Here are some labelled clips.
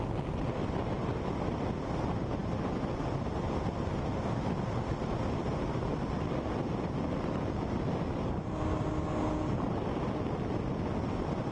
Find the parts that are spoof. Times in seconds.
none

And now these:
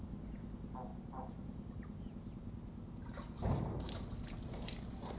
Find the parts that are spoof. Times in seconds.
0.9-2.0; 3.0-3.9

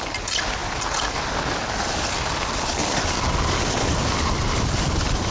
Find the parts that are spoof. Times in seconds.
none

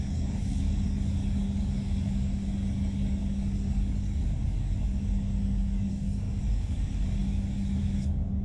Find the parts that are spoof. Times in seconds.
0.0-8.4

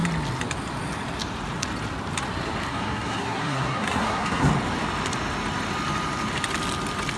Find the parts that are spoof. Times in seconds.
2.7-4.5